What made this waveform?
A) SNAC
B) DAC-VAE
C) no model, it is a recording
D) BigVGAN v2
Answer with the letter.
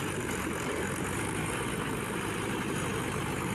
D